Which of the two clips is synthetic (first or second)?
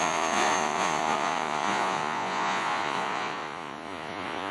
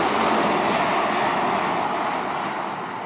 first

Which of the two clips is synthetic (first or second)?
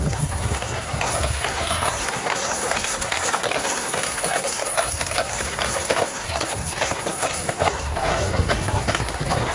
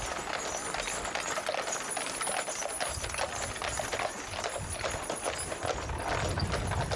first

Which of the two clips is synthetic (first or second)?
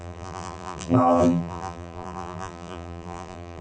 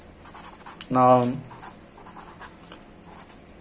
first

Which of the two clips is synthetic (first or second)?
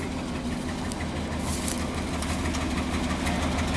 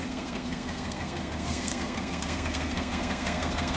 second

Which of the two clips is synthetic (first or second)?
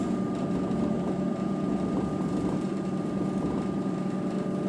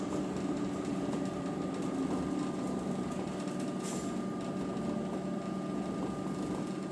first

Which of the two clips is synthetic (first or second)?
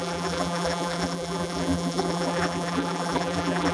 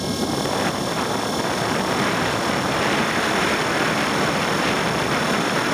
first